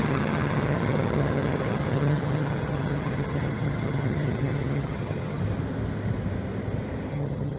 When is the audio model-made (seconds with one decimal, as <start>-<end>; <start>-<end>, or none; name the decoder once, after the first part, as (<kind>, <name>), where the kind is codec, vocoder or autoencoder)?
0.0-5.4 (vocoder, HiFi-GAN); 7.1-7.6